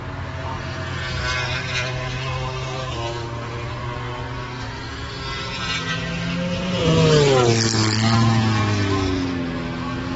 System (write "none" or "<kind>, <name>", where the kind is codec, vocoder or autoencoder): none